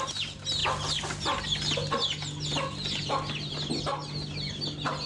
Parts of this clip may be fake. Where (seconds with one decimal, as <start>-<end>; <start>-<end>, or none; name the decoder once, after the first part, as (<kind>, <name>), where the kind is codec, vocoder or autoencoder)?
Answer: none